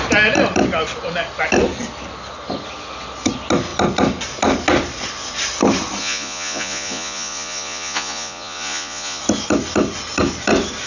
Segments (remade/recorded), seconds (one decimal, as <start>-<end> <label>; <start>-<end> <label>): 0.0-6.0 recorded; 6.0-9.2 remade; 9.2-10.9 recorded